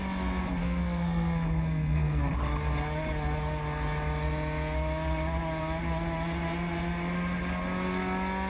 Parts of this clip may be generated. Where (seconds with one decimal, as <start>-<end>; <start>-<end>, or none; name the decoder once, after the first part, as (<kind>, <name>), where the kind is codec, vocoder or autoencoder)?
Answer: 0.6-2.3 (codec, SNAC)